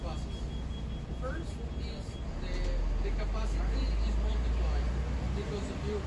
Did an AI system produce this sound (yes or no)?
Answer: no